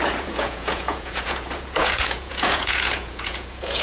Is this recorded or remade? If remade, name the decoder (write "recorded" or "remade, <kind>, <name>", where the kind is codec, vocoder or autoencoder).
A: remade, vocoder, Vocos